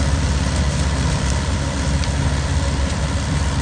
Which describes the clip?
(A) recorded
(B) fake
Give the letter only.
B